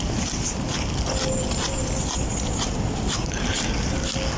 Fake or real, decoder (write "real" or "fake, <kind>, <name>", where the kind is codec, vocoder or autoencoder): real